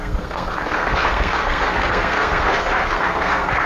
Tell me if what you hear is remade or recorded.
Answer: remade